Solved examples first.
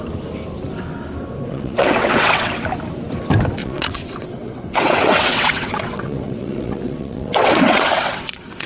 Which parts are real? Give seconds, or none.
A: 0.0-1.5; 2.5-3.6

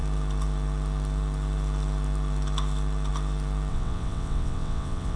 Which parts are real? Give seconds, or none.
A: 0.0-3.7

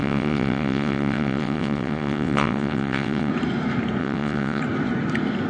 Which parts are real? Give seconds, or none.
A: 3.3-4.0; 4.6-5.5

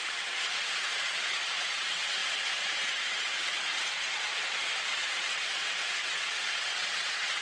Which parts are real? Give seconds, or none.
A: none

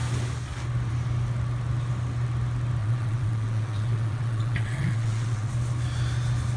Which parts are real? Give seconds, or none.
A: 0.0-2.8; 5.5-6.6

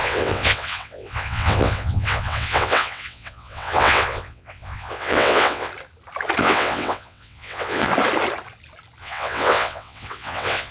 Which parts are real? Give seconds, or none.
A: 5.7-6.4; 7.9-9.0